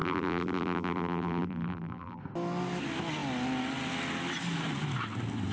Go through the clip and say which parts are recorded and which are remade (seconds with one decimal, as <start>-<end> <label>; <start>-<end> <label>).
0.0-2.2 remade; 2.2-5.5 recorded